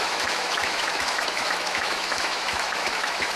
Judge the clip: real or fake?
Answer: fake